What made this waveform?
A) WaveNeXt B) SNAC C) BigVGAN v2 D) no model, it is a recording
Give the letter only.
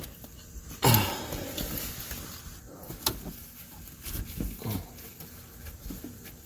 D